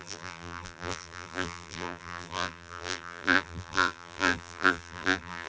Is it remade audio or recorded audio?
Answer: remade